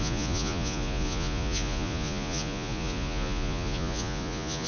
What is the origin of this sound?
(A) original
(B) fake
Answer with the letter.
B